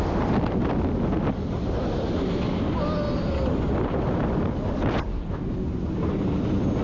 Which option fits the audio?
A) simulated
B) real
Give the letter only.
B